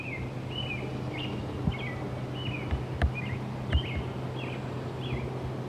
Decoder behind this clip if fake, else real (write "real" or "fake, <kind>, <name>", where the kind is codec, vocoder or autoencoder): real